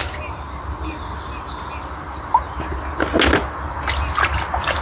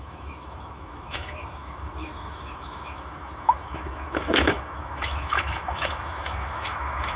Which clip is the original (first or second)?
first